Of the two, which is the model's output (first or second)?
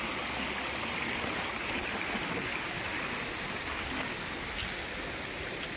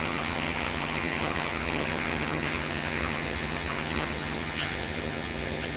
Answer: second